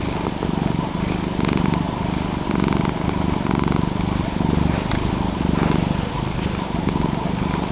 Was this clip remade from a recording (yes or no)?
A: no